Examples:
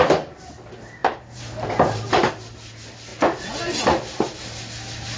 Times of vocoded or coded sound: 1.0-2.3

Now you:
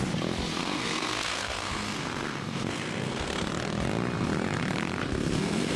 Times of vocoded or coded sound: 0.6-3.5; 5.0-5.8

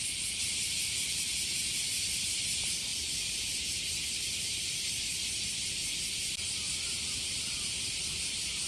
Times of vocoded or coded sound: none

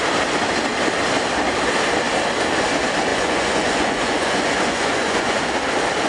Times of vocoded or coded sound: 3.1-5.5

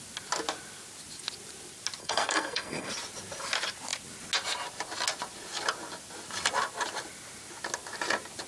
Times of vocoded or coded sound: 2.0-2.9

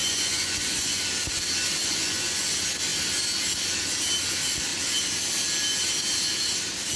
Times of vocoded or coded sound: 0.0-1.0; 1.8-2.5

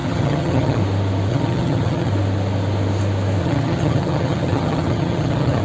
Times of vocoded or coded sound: 0.0-0.8; 1.3-2.1; 3.4-5.6